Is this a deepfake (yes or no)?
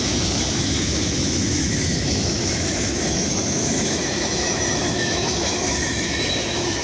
yes